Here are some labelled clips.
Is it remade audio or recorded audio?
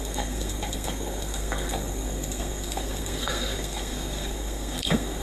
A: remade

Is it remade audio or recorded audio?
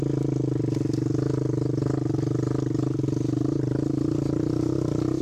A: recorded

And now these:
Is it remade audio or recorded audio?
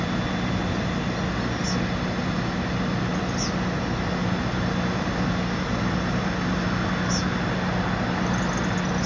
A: recorded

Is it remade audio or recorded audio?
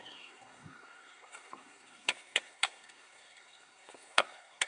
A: remade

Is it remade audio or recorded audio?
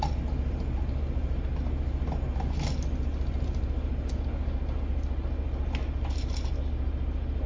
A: recorded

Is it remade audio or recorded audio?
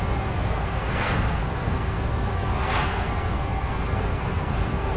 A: remade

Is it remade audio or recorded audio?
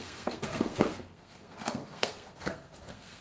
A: remade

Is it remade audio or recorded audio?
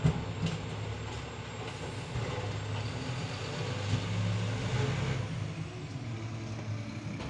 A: recorded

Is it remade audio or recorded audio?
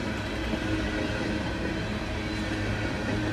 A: recorded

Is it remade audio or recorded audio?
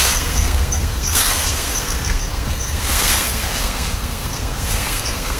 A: remade